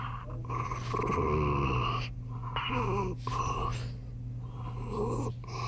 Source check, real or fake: real